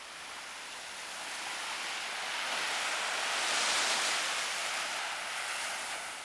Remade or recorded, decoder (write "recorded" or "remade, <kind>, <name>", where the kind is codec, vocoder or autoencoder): recorded